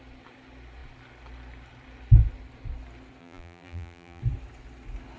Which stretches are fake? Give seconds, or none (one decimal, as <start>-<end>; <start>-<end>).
3.2-4.2

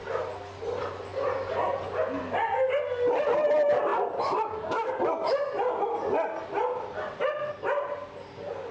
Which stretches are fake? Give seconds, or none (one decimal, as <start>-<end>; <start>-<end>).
1.1-2.2